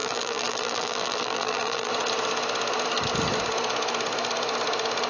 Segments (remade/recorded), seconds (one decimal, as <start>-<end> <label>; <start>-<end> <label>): 0.0-1.9 remade; 1.9-5.1 recorded